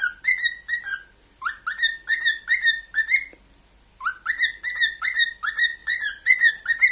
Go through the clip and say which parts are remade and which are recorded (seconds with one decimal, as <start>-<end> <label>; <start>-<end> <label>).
0.0-5.8 recorded; 5.8-6.5 remade; 6.5-6.9 recorded